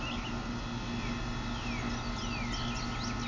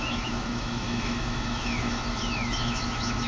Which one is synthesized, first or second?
second